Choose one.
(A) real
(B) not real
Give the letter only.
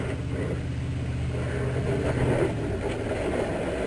A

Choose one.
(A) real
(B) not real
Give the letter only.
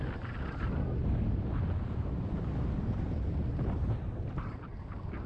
A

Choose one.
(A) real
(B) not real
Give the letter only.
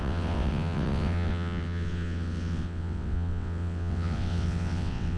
B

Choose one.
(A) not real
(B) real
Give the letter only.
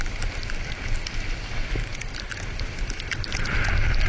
B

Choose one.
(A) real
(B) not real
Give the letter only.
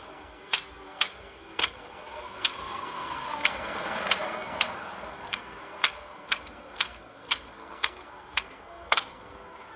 B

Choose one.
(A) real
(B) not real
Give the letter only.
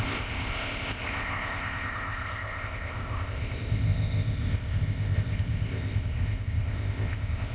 B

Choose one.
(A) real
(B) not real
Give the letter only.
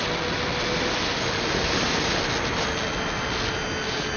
A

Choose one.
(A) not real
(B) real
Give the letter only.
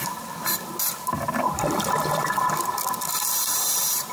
B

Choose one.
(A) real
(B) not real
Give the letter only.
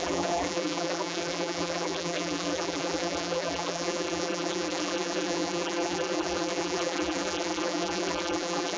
B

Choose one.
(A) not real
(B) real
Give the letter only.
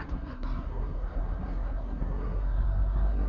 A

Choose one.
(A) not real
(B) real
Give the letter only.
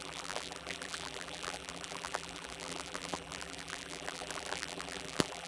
A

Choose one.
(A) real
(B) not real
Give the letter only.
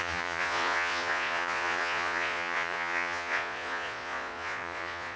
B